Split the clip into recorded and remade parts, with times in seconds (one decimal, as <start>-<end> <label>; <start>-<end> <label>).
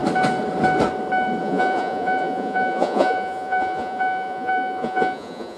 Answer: 0.0-1.4 recorded; 1.4-5.6 remade